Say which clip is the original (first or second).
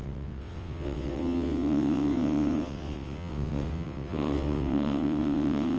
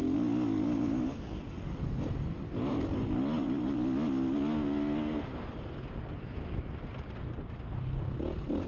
second